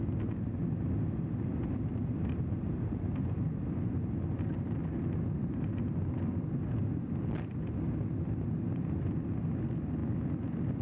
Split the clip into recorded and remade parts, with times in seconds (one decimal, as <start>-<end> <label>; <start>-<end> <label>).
0.0-10.8 recorded